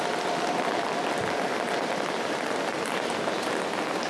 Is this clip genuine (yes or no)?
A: yes